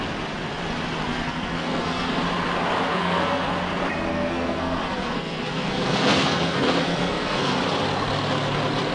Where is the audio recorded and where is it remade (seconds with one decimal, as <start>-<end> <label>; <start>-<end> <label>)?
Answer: 0.0-1.1 recorded; 1.1-2.2 remade; 2.2-2.9 recorded; 2.9-3.5 remade; 3.5-4.1 recorded; 4.1-7.6 remade; 7.6-8.9 recorded